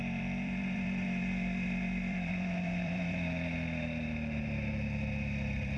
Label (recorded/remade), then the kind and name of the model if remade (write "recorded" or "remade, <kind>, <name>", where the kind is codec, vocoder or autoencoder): remade, vocoder, BigVGAN v2